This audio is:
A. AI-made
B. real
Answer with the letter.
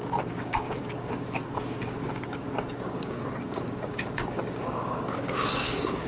A